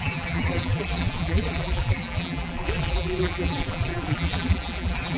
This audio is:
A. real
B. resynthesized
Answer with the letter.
B